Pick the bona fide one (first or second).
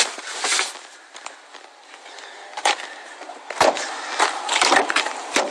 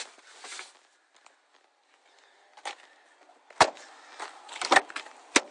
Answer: second